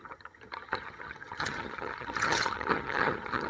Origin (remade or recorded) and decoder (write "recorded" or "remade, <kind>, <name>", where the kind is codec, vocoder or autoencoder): remade, vocoder, HiFi-GAN